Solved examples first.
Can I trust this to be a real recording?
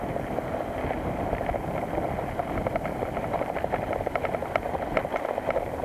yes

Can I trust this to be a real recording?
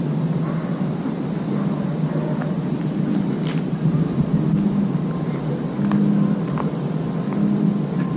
yes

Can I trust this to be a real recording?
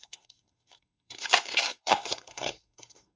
no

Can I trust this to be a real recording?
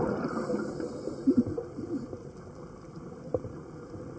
yes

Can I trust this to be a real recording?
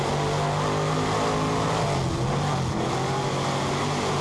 yes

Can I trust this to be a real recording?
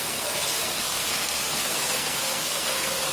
no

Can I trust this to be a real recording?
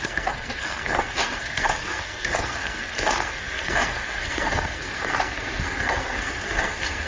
no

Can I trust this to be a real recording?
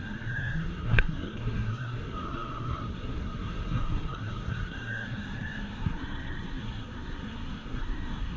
no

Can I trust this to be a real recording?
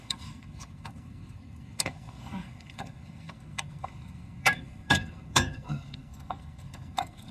no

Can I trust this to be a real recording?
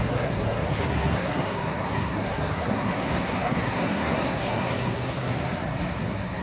no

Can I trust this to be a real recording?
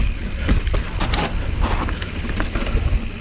yes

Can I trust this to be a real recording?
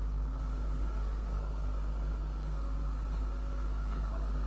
no